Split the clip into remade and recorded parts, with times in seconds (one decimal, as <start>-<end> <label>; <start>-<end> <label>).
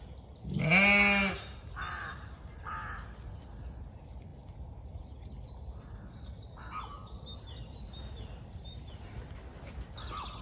0.0-10.4 recorded